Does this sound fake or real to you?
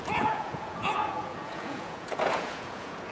fake